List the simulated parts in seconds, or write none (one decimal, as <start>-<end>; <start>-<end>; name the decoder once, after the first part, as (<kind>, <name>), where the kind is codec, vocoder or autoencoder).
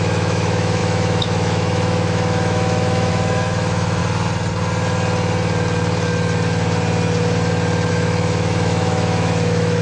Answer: 0.0-4.0 (autoencoder, DAC-VAE); 7.9-9.8